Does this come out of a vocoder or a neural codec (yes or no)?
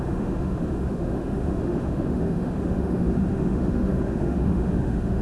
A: yes